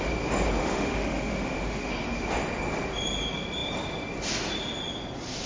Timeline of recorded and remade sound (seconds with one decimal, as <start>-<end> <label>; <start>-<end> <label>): 0.0-0.6 recorded; 0.6-1.9 remade; 1.9-5.5 recorded

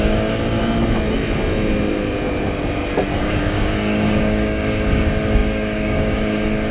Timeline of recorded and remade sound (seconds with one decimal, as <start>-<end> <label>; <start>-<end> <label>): 0.0-0.6 remade; 0.6-3.2 recorded; 3.2-6.7 remade

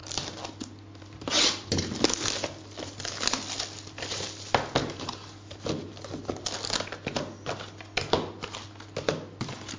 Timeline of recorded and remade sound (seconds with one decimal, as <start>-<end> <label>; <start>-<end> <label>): 0.0-9.8 recorded

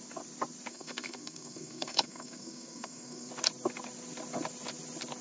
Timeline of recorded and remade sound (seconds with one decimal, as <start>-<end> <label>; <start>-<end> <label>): 0.0-0.7 recorded; 0.7-3.3 remade; 3.3-5.2 recorded

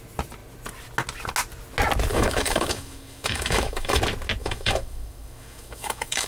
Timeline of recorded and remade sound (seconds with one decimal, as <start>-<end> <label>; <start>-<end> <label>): 0.0-2.1 recorded; 2.1-4.0 remade; 4.0-4.4 recorded; 4.4-6.3 remade

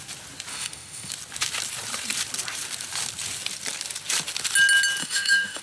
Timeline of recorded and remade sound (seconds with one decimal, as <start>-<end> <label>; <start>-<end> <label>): 0.0-0.5 recorded; 0.5-1.1 remade; 1.1-5.0 recorded; 5.0-5.6 remade

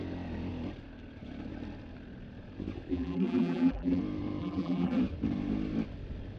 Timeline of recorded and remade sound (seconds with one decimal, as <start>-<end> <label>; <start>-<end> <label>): 0.0-2.9 recorded; 2.9-4.0 remade; 4.0-4.4 recorded; 4.4-5.0 remade; 5.0-6.4 recorded